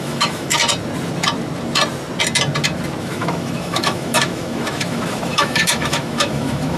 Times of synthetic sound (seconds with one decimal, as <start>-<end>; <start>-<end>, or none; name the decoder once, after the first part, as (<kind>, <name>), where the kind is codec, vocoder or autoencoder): 0.0-0.6 (autoencoder, DAC-VAE); 3.0-6.8